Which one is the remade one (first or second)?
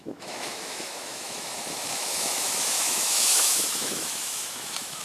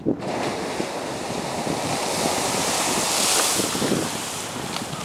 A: first